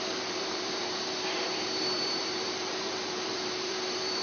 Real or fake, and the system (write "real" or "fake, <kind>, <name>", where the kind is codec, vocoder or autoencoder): fake, vocoder, BigVGAN v2